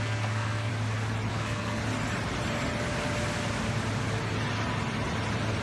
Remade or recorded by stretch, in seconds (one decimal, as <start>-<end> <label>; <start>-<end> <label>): 0.0-0.7 remade; 0.7-1.3 recorded; 1.3-1.8 remade; 1.8-5.6 recorded